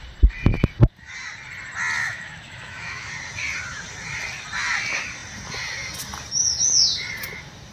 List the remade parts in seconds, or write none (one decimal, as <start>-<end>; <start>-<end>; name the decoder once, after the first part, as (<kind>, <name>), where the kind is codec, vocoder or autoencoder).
2.0-3.1 (autoencoder, DAC-VAE)